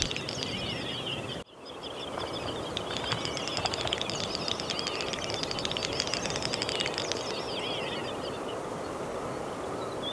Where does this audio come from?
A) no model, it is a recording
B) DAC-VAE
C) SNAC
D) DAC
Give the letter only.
A